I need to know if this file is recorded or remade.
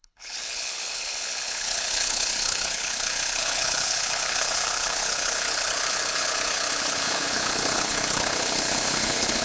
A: remade